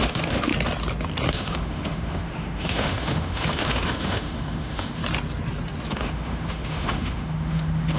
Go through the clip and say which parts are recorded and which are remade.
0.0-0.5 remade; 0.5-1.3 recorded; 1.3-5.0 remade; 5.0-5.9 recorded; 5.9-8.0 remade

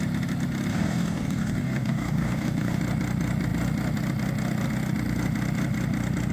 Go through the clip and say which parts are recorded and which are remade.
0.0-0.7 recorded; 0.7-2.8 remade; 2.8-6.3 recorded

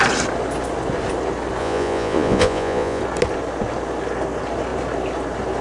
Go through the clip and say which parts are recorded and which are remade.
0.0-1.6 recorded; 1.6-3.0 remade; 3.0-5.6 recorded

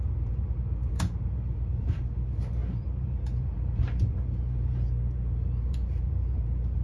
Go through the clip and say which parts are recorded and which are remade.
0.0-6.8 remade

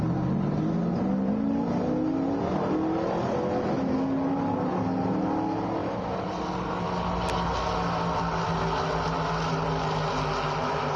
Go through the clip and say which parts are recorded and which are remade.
0.0-11.0 recorded

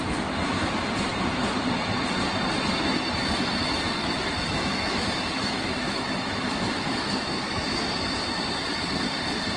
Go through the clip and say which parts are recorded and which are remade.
0.0-4.0 recorded; 4.0-7.8 remade; 7.8-9.6 recorded

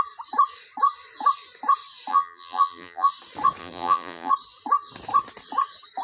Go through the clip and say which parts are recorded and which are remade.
0.0-2.1 recorded; 2.1-3.1 remade; 3.1-3.6 recorded; 3.6-4.3 remade; 4.3-6.0 recorded

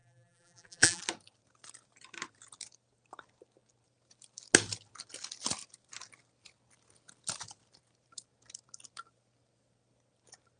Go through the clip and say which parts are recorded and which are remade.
0.0-1.0 remade; 1.0-10.6 recorded